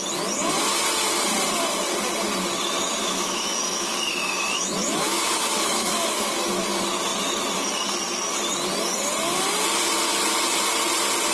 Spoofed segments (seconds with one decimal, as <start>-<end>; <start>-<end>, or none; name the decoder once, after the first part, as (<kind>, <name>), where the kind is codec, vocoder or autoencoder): 2.9-6.3 (autoencoder, DAC-VAE)